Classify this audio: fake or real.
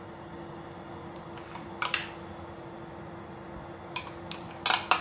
real